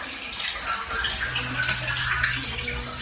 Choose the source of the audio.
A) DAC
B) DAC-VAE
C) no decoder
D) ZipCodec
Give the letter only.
C